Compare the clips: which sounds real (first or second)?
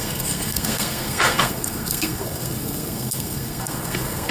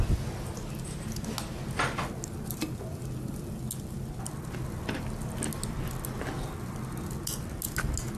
second